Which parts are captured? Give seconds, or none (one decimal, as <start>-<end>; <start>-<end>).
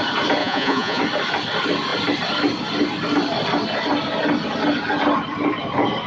0.0-0.4; 1.0-6.1